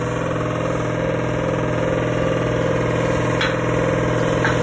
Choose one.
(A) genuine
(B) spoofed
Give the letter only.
A